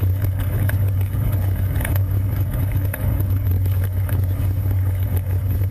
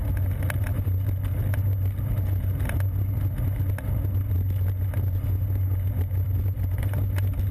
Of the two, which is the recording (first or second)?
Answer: second